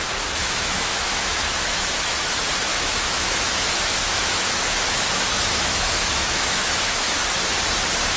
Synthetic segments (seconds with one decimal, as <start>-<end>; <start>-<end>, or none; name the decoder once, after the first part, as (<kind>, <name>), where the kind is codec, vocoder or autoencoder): 0.4-2.3 (autoencoder, DAC-VAE); 2.7-7.2